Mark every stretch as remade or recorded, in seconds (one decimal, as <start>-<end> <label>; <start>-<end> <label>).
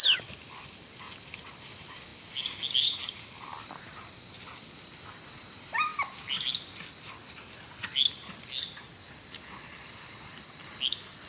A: 0.0-11.3 recorded